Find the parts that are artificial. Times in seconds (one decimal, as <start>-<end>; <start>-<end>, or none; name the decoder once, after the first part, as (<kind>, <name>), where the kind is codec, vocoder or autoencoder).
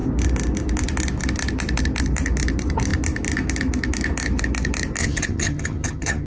5.0-6.3 (vocoder, HiFi-GAN)